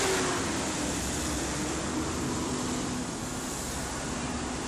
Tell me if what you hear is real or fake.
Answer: real